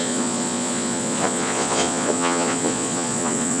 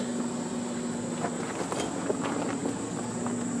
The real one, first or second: second